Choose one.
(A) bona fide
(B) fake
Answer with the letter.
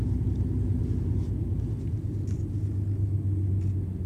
A